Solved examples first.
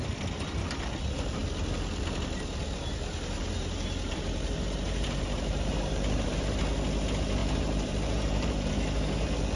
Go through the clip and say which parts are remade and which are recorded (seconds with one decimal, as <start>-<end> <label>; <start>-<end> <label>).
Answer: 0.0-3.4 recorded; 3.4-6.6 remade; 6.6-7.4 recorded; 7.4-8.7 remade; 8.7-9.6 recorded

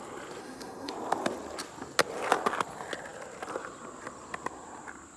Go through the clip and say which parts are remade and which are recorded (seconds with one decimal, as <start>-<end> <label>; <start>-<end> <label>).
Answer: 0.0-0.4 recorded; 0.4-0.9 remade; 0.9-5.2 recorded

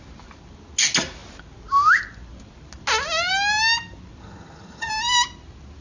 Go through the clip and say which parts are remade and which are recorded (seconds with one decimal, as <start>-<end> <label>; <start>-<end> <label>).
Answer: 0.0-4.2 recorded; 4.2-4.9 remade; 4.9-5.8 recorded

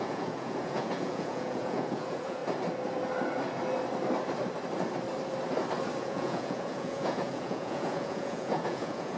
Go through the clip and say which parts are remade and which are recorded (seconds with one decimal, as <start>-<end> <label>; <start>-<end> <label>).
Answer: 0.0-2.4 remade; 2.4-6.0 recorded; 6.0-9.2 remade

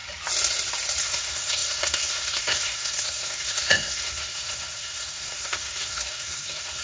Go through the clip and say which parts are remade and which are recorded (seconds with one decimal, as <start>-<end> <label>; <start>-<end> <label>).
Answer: 0.0-1.0 recorded; 1.0-6.8 remade